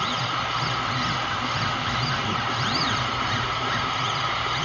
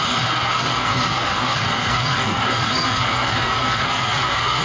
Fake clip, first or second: second